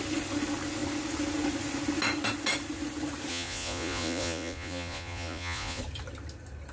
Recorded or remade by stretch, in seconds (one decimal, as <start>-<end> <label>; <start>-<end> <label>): 0.0-3.3 recorded; 3.3-5.8 remade; 5.8-6.7 recorded

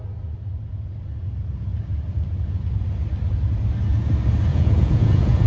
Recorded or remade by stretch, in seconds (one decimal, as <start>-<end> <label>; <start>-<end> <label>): 0.0-4.5 recorded; 4.5-5.5 remade

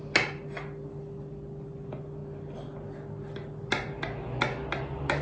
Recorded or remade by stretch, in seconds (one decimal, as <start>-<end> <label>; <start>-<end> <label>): 0.0-5.2 recorded

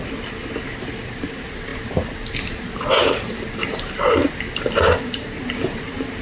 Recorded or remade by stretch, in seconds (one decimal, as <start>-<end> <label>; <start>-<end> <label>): 0.0-6.2 recorded

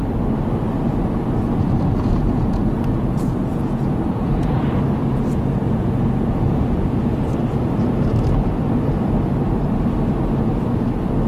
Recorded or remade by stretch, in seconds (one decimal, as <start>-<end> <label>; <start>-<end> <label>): 0.0-2.3 recorded; 2.3-4.6 remade; 4.6-5.0 recorded; 5.0-7.3 remade; 7.3-11.3 recorded

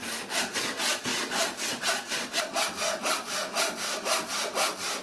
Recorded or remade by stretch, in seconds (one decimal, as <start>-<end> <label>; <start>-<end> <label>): 0.0-5.0 recorded

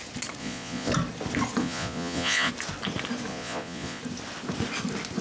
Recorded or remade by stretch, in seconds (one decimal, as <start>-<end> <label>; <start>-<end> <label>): 0.0-0.4 recorded; 0.4-0.9 remade; 0.9-1.6 recorded; 1.6-2.5 remade; 2.5-3.3 recorded; 3.3-4.0 remade; 4.0-5.2 recorded

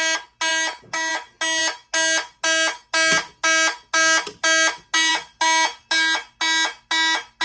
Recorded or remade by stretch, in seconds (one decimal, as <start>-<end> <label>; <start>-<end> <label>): 0.0-7.4 recorded